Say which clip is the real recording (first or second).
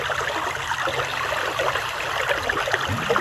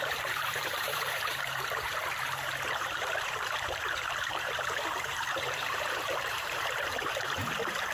first